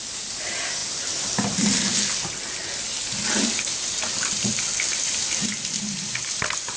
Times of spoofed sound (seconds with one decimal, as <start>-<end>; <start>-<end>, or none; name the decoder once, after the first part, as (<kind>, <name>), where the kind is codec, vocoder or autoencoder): none